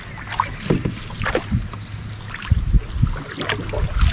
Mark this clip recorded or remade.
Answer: recorded